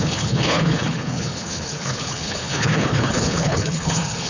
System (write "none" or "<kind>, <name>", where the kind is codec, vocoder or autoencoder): codec, HILCodec